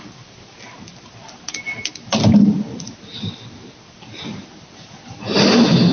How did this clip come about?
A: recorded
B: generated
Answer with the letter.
A